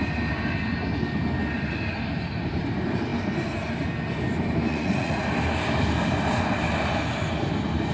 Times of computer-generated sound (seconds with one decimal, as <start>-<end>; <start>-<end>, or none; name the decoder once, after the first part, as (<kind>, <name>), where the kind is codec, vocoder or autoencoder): 4.7-5.2 (vocoder, Vocos)